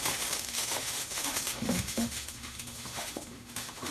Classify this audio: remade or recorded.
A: remade